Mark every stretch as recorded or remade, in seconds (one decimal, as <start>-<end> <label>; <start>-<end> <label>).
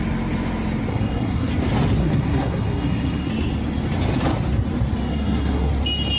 0.0-0.9 recorded; 0.9-1.5 remade; 1.5-2.0 recorded; 2.0-3.3 remade; 3.3-5.1 recorded; 5.1-5.7 remade; 5.7-6.2 recorded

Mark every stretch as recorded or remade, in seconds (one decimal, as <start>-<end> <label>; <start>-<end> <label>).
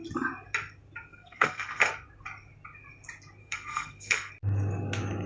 0.0-1.1 recorded; 1.1-1.9 remade; 1.9-3.4 recorded; 3.4-4.3 remade; 4.3-5.3 recorded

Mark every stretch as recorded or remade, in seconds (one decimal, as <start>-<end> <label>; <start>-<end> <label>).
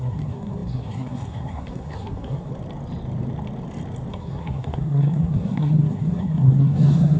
0.0-2.5 remade; 2.5-4.1 recorded; 4.1-7.2 remade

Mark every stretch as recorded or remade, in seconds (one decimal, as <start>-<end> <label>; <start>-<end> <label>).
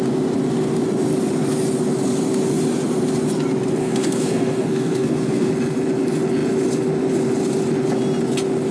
0.0-3.8 recorded; 3.8-5.5 remade; 5.5-8.7 recorded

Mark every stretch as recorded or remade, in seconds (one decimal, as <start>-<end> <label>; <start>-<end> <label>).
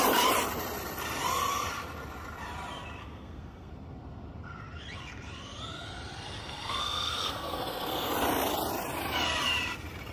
0.0-3.0 recorded; 3.0-3.7 remade; 3.7-6.4 recorded; 6.4-8.1 remade; 8.1-10.1 recorded